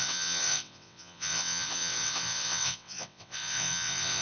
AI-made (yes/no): yes